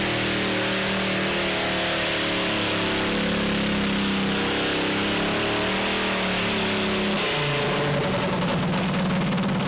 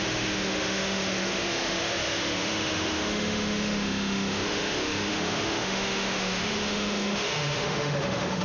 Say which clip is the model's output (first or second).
second